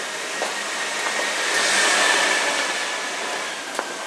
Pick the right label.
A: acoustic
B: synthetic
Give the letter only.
A